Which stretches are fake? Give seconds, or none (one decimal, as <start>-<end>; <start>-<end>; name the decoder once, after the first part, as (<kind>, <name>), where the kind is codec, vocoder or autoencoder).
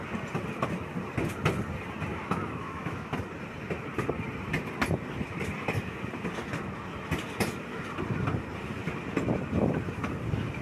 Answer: 2.1-3.1 (autoencoder, DAC-VAE)